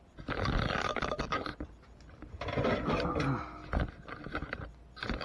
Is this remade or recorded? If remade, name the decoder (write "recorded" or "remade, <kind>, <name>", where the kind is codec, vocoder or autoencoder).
recorded